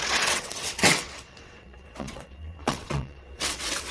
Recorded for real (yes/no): no